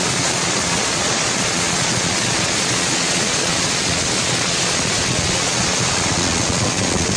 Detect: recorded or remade remade